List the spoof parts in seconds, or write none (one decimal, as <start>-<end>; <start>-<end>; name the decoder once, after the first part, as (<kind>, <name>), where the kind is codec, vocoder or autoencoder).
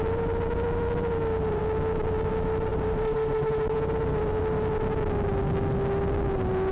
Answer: 2.7-3.5 (vocoder, BigVGAN v2)